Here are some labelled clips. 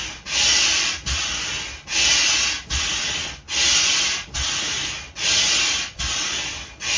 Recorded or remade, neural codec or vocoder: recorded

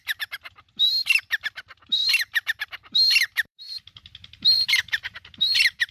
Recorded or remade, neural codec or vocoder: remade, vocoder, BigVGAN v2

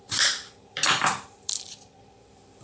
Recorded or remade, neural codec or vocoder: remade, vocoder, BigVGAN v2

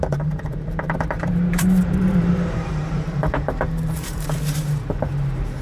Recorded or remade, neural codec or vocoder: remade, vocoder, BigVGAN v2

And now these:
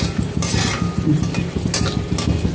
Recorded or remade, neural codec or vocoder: recorded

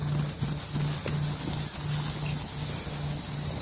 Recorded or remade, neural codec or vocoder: recorded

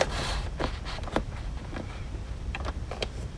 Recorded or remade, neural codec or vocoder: remade, vocoder, BigVGAN v2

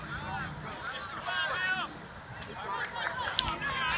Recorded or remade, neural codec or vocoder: recorded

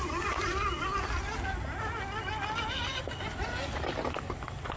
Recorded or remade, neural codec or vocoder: recorded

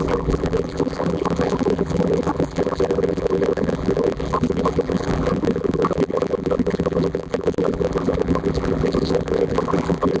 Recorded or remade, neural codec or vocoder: remade, vocoder, BigVGAN v2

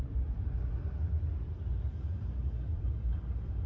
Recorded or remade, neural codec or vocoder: remade, vocoder, BigVGAN v2